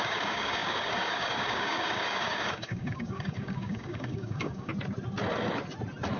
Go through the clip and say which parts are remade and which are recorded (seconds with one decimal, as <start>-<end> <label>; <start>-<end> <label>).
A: 0.0-4.7 remade; 4.7-6.2 recorded